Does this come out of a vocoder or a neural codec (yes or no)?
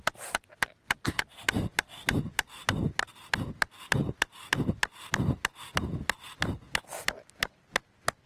no